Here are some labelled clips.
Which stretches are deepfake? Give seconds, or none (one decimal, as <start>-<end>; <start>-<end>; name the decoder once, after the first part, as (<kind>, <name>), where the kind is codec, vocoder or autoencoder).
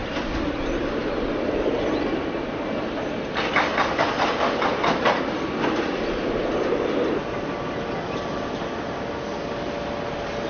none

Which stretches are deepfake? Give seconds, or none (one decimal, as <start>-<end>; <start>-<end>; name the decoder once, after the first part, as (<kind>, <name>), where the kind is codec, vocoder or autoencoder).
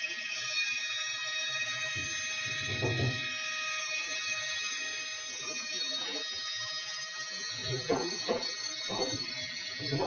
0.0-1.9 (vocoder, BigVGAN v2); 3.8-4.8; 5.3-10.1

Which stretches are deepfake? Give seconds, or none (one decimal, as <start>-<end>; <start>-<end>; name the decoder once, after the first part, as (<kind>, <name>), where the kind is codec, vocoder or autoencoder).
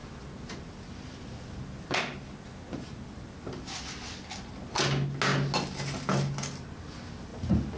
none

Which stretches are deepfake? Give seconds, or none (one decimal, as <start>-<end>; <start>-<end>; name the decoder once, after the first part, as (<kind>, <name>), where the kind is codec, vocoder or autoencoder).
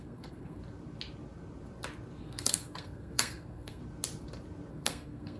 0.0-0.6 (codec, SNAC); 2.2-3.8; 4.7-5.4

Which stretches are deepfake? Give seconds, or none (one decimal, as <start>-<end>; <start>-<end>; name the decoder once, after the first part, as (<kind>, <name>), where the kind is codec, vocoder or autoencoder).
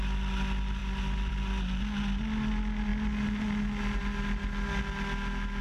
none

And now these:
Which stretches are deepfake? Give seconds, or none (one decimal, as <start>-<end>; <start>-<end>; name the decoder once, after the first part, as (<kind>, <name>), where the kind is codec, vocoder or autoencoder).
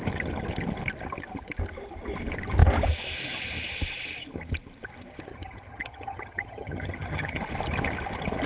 5.3-7.4 (vocoder, HiFi-GAN)